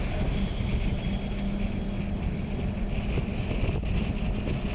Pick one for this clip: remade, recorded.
recorded